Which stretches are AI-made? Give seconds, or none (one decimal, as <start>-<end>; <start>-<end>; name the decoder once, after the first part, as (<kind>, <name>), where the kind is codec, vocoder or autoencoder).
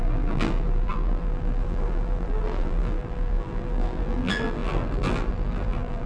0.0-6.1 (vocoder, BigVGAN v2)